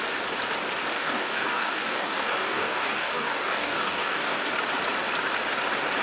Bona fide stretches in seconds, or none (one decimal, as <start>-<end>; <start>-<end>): 0.0-0.9; 4.5-6.0